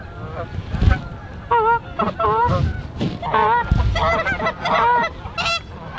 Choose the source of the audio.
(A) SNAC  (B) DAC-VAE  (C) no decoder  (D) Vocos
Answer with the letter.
C